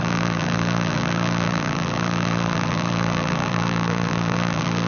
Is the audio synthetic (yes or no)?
yes